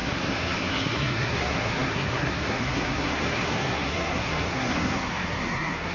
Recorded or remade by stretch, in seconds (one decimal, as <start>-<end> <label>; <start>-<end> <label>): 0.0-5.9 remade